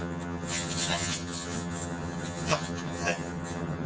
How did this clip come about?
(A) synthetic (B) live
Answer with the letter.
A